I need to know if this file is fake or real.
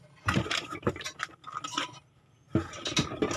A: fake